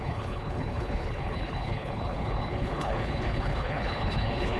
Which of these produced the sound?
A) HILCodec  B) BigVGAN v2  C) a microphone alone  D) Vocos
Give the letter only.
A